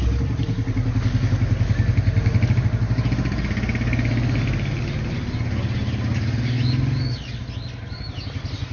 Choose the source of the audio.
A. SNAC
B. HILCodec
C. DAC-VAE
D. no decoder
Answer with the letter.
D